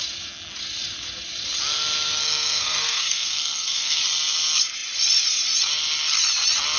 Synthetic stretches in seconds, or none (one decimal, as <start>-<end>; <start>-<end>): 2.2-4.0